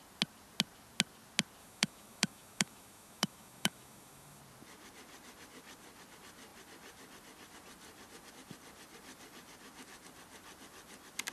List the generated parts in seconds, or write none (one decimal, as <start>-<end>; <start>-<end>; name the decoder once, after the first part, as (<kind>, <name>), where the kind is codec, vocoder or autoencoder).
1.6-4.4 (autoencoder, DAC-VAE)